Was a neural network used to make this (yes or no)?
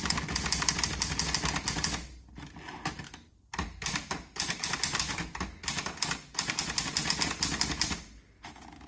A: no